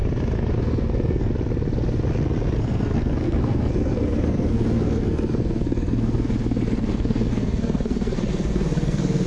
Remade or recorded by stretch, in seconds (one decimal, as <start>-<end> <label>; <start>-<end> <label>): 0.0-0.6 recorded; 0.6-1.3 remade; 1.3-2.5 recorded; 2.5-9.3 remade